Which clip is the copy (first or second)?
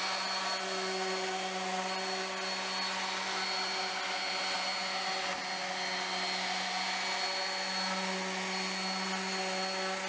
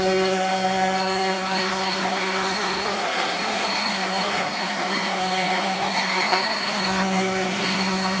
second